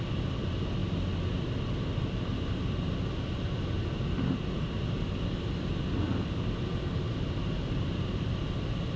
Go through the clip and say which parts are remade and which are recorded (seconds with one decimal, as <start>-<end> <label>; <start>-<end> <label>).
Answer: 0.0-9.0 recorded